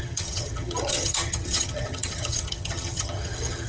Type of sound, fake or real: fake